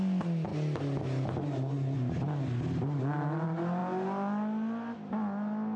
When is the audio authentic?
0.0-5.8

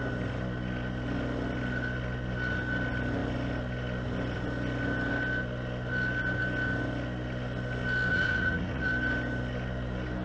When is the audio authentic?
0.0-8.1; 8.9-10.2